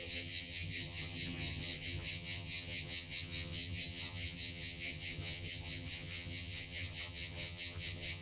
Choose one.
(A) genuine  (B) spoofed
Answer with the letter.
B